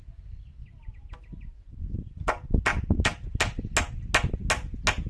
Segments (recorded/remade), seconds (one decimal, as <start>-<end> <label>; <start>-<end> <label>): 0.0-5.1 recorded